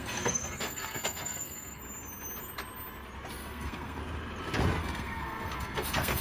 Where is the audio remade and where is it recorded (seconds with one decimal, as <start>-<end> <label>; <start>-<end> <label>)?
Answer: 0.0-1.8 remade; 1.8-3.4 recorded; 3.4-4.0 remade; 4.0-4.8 recorded; 4.8-6.2 remade